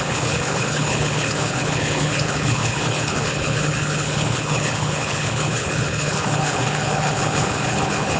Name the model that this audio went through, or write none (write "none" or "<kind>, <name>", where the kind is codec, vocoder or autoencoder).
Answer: codec, HILCodec